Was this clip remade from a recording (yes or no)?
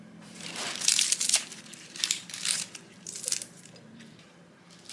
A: yes